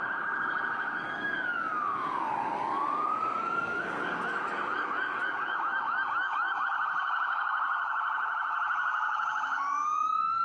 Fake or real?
fake